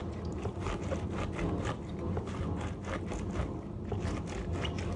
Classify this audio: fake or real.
real